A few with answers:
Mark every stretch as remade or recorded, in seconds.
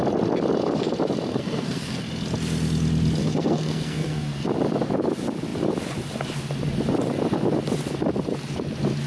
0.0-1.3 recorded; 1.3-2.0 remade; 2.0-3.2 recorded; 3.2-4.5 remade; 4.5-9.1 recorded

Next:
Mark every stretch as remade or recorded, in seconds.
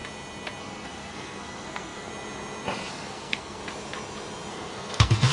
0.0-0.6 recorded; 0.6-2.1 remade; 2.1-2.9 recorded; 2.9-3.6 remade; 3.6-4.5 recorded; 4.5-5.3 remade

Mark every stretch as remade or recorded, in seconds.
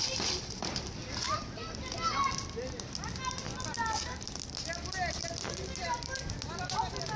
0.0-7.2 recorded